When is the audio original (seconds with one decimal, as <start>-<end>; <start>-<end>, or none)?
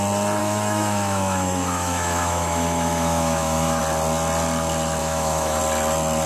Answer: 0.0-0.4; 3.8-5.0; 5.6-6.3